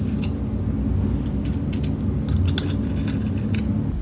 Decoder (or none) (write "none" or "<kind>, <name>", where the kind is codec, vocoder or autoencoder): none